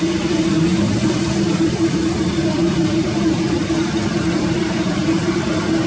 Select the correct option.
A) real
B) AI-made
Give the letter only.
B